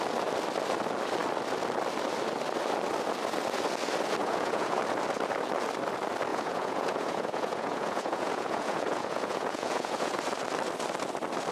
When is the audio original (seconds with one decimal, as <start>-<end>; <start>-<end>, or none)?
0.0-4.2; 4.8-6.3; 10.2-11.5

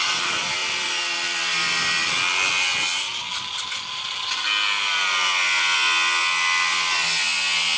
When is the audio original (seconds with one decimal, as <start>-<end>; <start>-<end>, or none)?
0.0-7.8

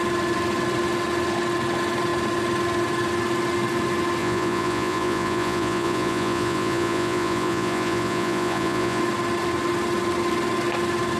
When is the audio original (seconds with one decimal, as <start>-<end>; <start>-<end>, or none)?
0.0-4.2; 9.0-11.2